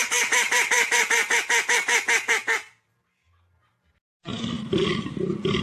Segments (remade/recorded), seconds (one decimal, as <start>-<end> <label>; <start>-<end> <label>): 0.0-1.2 remade; 1.2-2.4 recorded; 2.4-5.6 remade